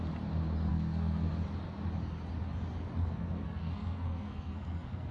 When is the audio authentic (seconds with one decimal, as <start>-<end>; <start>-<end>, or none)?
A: 0.0-0.7; 1.3-3.0